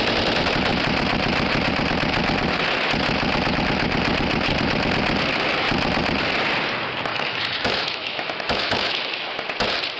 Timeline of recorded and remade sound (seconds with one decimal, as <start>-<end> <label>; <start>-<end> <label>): 0.0-7.1 recorded; 7.1-9.3 remade; 9.3-10.0 recorded